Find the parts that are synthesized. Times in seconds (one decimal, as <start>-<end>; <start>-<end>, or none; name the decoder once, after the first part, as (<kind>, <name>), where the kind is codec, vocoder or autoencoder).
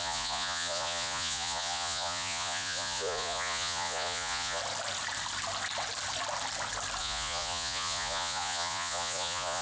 0.0-4.6 (vocoder, Vocos); 7.0-9.6